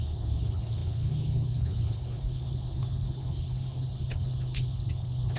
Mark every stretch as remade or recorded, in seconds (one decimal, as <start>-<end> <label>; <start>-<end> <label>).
0.0-5.4 remade